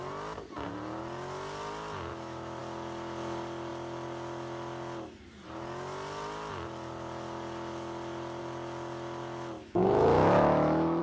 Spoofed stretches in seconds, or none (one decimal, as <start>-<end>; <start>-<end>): 2.1-2.6; 9.6-11.0